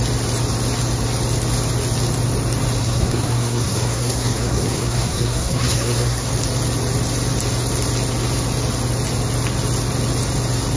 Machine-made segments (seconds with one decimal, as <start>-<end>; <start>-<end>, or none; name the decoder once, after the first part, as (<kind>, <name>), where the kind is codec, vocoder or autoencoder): 2.8-6.3 (codec, SNAC)